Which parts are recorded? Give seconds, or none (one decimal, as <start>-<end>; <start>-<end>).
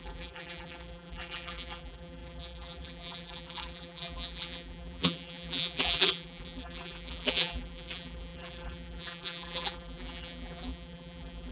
none